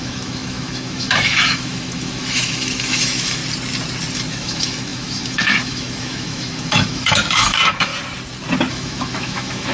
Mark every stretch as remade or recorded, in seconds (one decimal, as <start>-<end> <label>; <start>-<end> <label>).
0.0-3.4 remade; 3.4-4.1 recorded; 4.1-7.9 remade; 7.9-8.7 recorded; 8.7-9.7 remade